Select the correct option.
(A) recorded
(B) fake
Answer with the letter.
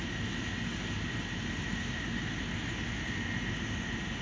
A